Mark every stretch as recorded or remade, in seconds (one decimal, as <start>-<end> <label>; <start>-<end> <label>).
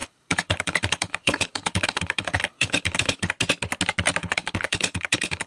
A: 0.0-3.3 remade; 3.3-4.2 recorded; 4.2-5.5 remade